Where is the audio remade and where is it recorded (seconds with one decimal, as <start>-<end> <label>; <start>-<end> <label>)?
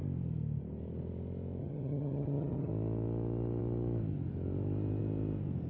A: 0.0-1.6 recorded; 1.6-2.7 remade; 2.7-5.7 recorded